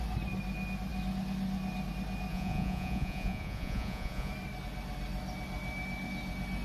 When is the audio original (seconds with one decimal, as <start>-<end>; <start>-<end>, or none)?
0.0-2.3; 4.3-6.6